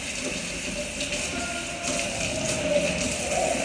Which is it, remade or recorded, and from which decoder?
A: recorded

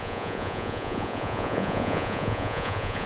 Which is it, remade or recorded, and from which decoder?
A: remade, vocoder, Vocos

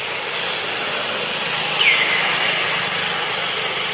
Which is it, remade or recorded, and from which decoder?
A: recorded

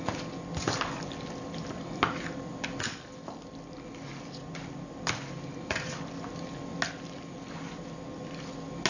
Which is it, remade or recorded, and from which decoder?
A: recorded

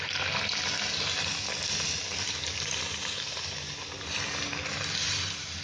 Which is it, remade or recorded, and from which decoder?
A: recorded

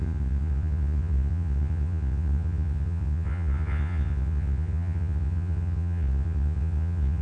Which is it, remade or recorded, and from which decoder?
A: remade, vocoder, Vocos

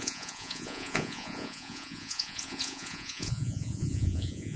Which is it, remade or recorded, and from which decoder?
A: remade, vocoder, Vocos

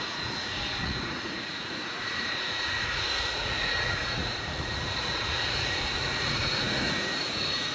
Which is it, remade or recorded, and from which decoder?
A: remade, vocoder, Vocos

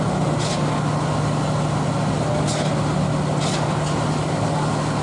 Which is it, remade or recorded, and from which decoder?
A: recorded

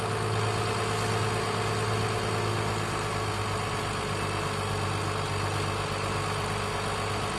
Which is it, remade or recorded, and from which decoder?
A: recorded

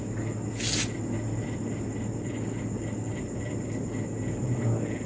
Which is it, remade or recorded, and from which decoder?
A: recorded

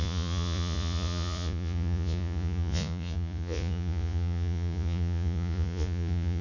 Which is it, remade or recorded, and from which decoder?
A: remade, vocoder, Vocos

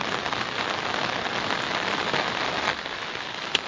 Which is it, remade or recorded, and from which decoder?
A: recorded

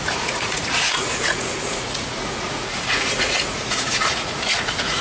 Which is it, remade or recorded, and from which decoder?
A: remade, vocoder, Vocos